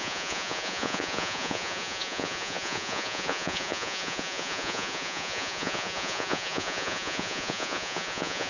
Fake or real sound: fake